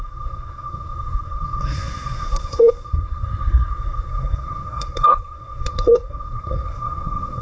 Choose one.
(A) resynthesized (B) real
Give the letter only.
A